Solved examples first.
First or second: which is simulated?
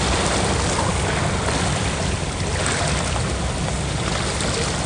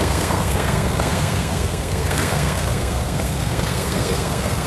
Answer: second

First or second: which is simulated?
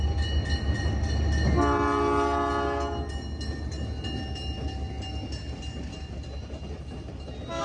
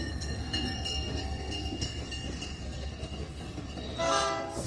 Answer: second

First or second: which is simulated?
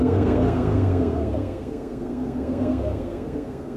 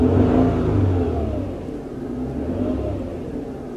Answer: first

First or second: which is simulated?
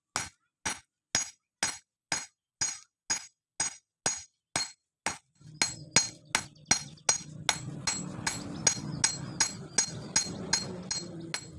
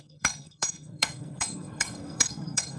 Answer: second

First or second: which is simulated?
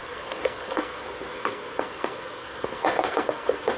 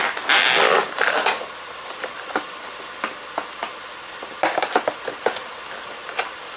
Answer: first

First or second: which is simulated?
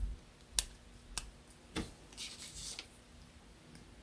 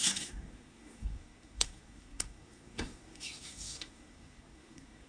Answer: second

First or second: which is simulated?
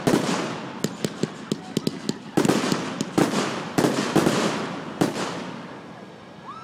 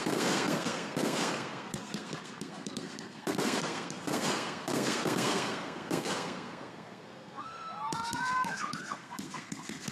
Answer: second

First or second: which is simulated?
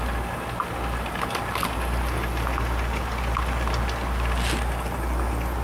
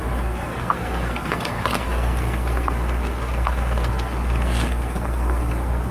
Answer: second